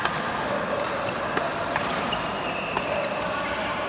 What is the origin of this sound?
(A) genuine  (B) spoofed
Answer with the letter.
A